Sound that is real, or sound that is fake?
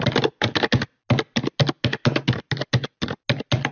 real